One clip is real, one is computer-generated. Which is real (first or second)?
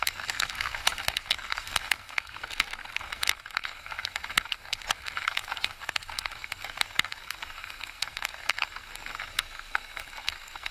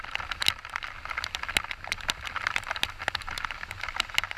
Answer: second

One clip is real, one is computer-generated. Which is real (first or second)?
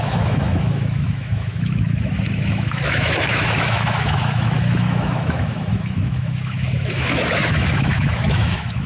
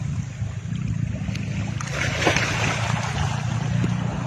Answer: second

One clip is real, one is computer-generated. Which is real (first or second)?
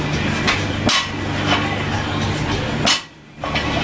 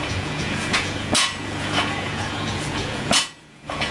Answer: first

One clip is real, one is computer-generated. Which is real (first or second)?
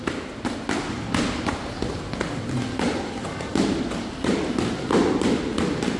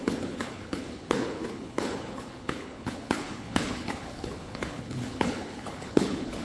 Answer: first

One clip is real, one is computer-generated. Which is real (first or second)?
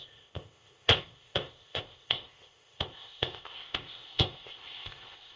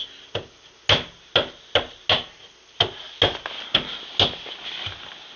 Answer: second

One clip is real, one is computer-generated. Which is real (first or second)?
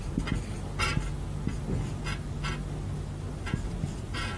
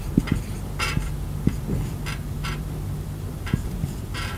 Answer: first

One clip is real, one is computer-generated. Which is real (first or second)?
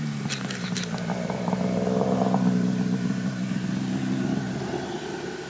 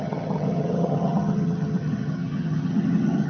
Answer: first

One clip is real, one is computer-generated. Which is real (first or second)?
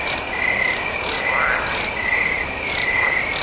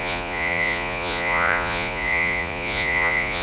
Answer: first